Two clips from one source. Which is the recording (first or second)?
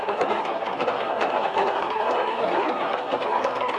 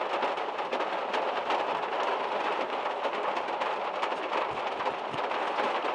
second